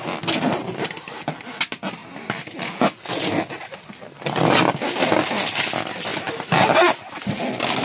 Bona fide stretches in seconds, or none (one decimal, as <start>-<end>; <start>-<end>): 0.0-6.1; 6.6-7.8